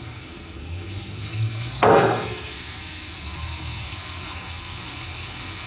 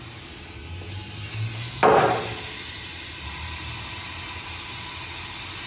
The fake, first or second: first